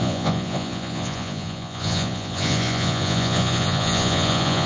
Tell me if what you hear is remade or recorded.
remade